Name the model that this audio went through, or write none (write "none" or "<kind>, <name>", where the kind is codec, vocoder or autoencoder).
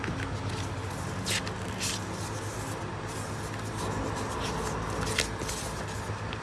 none